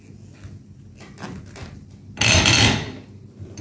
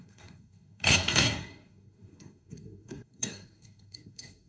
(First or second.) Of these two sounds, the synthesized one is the second